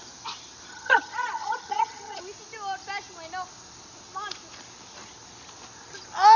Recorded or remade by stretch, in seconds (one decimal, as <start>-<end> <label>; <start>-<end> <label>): 0.0-0.7 recorded; 0.7-2.2 remade; 2.2-6.4 recorded

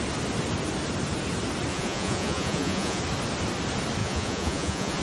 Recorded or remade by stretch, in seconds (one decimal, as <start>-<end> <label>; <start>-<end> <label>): 0.0-1.7 recorded; 1.7-3.0 remade; 3.0-4.0 recorded; 4.0-5.0 remade

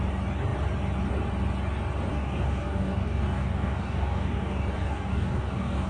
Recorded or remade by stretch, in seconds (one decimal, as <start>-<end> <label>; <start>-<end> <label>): 0.0-2.1 recorded; 2.1-5.9 remade

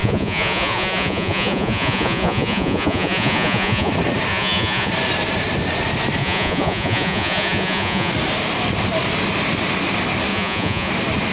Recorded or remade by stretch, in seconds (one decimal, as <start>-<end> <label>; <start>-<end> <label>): 0.0-3.9 remade; 3.9-4.3 recorded; 4.3-4.9 remade; 4.9-6.2 recorded; 6.2-8.1 remade; 8.1-10.3 recorded; 10.3-10.9 remade; 10.9-11.3 recorded